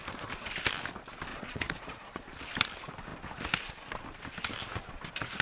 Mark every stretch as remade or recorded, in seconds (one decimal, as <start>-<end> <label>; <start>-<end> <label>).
0.0-1.3 recorded; 1.3-2.3 remade; 2.3-5.4 recorded